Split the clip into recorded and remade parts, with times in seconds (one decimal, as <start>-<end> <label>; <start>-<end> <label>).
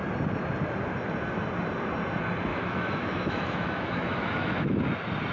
0.0-2.5 recorded; 2.5-4.8 remade; 4.8-5.3 recorded